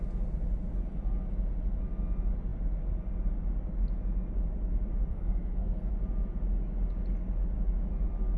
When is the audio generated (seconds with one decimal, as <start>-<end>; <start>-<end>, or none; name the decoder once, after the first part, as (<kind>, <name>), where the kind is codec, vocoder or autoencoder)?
5.1-5.9 (codec, SNAC)